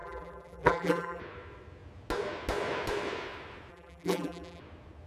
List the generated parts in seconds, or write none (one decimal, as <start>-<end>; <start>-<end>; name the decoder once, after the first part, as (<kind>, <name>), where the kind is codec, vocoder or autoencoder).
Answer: 0.0-1.2 (vocoder, BigVGAN v2); 3.7-4.6